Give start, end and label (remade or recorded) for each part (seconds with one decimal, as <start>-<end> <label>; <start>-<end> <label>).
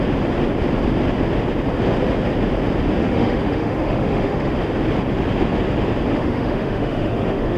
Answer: 0.0-3.0 recorded; 3.0-4.5 remade; 4.5-6.1 recorded; 6.1-7.6 remade